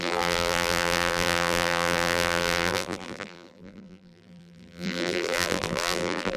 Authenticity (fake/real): fake